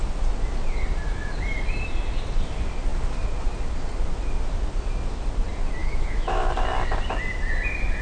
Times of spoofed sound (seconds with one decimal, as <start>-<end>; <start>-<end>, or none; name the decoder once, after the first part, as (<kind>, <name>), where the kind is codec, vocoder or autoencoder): 5.8-6.5 (autoencoder, DAC-VAE)